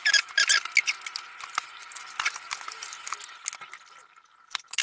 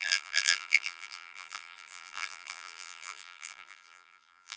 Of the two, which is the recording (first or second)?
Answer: first